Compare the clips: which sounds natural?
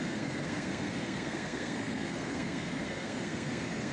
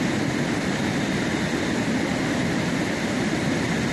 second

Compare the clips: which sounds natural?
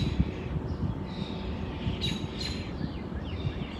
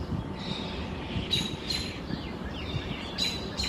first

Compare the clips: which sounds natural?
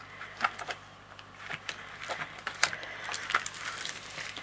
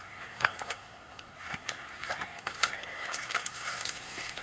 first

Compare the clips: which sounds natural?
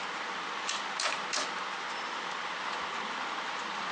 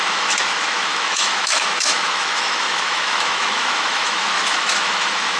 first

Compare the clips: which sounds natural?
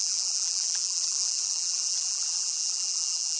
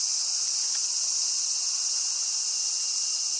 second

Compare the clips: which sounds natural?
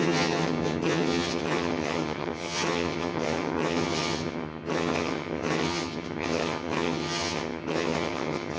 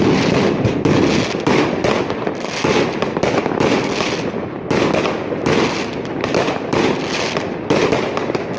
second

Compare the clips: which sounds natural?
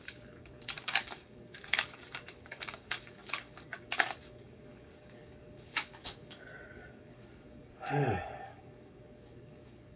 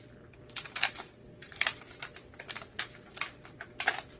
second